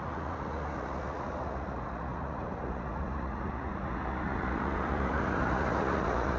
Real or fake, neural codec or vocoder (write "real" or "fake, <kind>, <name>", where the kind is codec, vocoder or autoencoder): fake, vocoder, Vocos